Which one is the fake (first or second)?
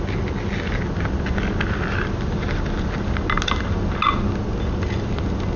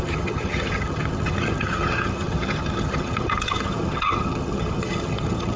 second